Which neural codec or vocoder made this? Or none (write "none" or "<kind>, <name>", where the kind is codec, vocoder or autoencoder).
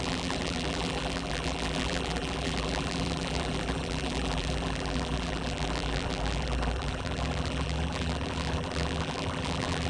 vocoder, BigVGAN v2